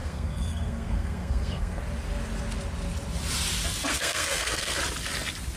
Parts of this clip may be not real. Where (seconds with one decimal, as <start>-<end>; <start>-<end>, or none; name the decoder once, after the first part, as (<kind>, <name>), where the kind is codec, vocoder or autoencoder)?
0.0-1.8 (codec, SNAC); 3.9-4.8